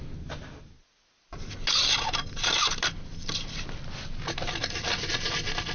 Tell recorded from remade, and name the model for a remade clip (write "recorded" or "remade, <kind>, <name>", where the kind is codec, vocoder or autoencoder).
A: recorded